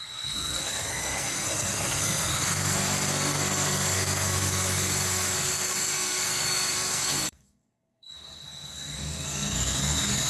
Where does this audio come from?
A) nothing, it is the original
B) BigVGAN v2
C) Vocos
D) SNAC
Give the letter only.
D